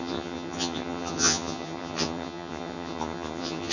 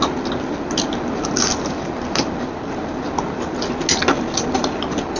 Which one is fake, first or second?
first